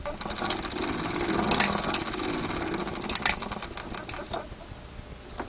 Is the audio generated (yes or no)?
no